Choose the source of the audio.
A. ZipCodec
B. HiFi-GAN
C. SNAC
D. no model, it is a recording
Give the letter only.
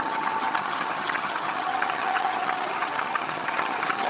B